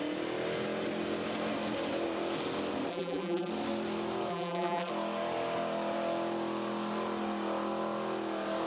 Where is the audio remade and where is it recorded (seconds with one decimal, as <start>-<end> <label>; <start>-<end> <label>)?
0.0-2.9 recorded; 2.9-3.5 remade; 3.5-4.3 recorded; 4.3-4.9 remade; 4.9-8.7 recorded

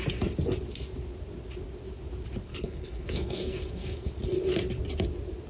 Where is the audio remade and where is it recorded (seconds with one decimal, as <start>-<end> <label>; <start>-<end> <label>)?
0.0-2.5 recorded; 2.5-4.1 remade; 4.1-5.5 recorded

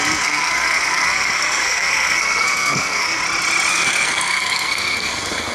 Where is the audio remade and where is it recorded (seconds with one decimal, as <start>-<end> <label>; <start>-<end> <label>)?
0.0-3.2 remade; 3.2-3.7 recorded; 3.7-5.5 remade

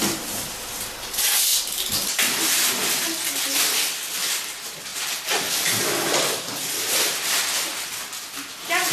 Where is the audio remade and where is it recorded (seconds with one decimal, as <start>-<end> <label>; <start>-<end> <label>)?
0.0-8.9 recorded

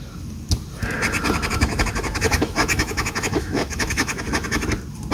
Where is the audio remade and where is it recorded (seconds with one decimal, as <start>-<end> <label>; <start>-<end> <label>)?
0.0-1.5 recorded; 1.5-4.6 remade; 4.6-5.1 recorded